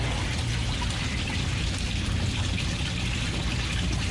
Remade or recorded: recorded